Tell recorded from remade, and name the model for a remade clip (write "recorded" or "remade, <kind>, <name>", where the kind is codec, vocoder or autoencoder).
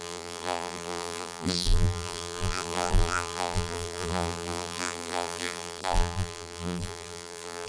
remade, vocoder, BigVGAN v2